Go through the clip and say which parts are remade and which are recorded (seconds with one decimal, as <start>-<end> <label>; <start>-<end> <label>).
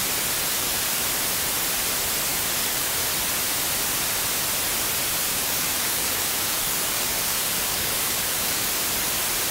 0.0-0.5 recorded; 0.5-1.0 remade; 1.0-2.3 recorded; 2.3-2.9 remade; 2.9-5.2 recorded; 5.2-8.7 remade; 8.7-9.5 recorded